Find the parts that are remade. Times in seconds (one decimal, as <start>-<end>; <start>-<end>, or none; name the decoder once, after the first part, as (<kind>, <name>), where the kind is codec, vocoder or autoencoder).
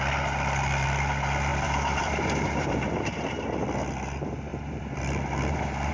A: 1.5-3.1 (vocoder, BigVGAN v2); 4.5-5.9